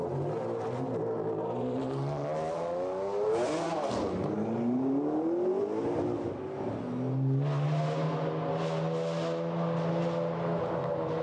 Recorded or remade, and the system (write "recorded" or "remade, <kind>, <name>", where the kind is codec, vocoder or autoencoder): recorded